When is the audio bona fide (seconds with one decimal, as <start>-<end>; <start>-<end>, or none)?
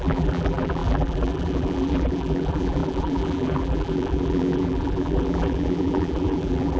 none